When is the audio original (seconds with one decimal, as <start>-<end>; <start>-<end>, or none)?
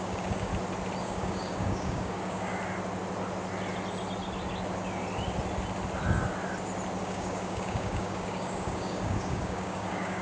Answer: 0.5-1.0; 2.5-7.0